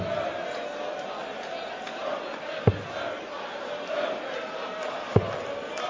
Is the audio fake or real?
real